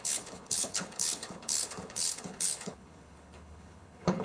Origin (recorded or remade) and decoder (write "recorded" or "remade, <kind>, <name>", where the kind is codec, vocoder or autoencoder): remade, codec, HILCodec